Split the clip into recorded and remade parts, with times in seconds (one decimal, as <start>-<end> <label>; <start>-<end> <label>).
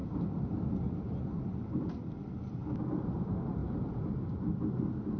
0.0-2.2 remade; 2.2-3.6 recorded; 3.6-4.1 remade; 4.1-5.2 recorded